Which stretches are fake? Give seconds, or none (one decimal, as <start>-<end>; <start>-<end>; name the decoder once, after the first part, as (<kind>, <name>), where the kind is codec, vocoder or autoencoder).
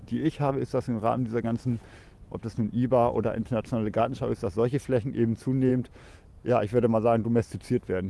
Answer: 0.0-0.5 (vocoder, Vocos); 5.7-6.4